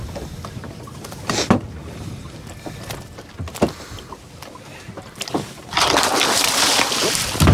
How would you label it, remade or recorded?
recorded